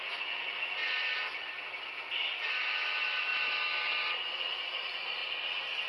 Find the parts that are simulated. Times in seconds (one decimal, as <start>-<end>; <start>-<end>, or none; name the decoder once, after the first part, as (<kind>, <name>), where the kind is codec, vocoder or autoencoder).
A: none